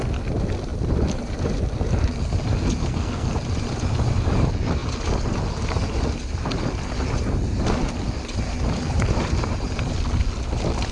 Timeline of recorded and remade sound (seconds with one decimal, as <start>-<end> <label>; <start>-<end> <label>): 0.0-2.8 recorded; 2.8-3.3 remade; 3.3-10.9 recorded

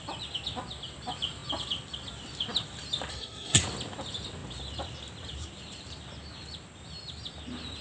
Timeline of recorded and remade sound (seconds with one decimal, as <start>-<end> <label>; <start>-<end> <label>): 0.0-3.1 recorded; 3.1-3.6 remade; 3.6-7.8 recorded

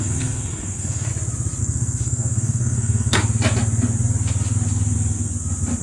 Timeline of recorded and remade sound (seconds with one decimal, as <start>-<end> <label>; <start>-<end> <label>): 0.0-1.1 remade; 1.1-1.6 recorded; 1.6-3.2 remade; 3.2-5.8 recorded

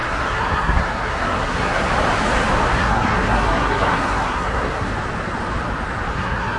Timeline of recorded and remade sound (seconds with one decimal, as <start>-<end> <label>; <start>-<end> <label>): 0.0-1.9 remade; 1.9-2.7 recorded; 2.7-4.9 remade; 4.9-6.1 recorded; 6.1-6.6 remade

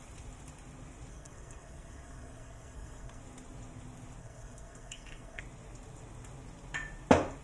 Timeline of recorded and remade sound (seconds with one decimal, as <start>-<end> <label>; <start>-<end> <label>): 0.0-1.1 recorded; 1.1-3.2 remade; 3.2-4.2 recorded; 4.2-5.4 remade; 5.4-7.4 recorded

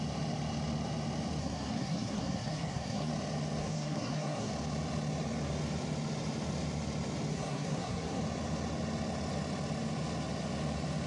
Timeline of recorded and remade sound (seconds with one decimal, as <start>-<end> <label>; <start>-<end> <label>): 0.0-1.4 recorded; 1.4-3.1 remade; 3.1-3.6 recorded; 3.6-4.5 remade; 4.5-7.3 recorded; 7.3-8.2 remade; 8.2-11.1 recorded

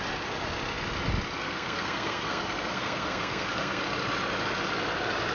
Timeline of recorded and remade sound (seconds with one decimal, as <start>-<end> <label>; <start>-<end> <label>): 0.0-1.4 recorded; 1.4-3.8 remade; 3.8-5.3 recorded

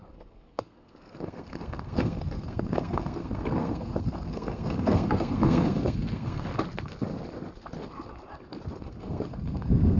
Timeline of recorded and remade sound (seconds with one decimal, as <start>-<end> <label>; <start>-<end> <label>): 0.0-6.5 remade; 6.5-8.8 recorded; 8.8-10.0 remade